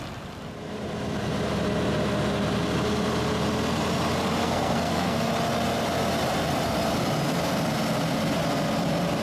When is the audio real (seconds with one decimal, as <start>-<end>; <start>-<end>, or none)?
0.0-4.4; 5.3-9.2